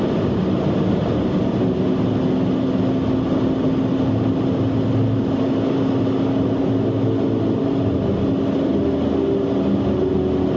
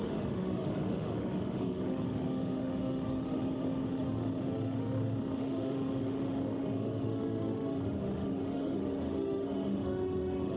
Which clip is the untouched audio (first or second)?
first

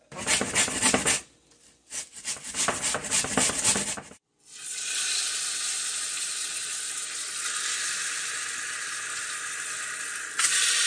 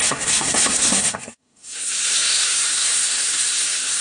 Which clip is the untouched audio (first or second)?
first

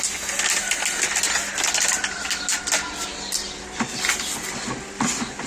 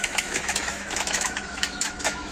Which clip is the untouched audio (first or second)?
first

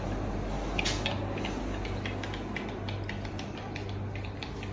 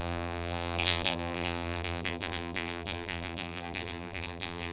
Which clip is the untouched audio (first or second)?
first